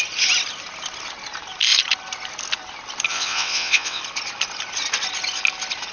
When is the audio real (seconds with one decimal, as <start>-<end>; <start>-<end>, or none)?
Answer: 0.0-3.1; 4.0-5.9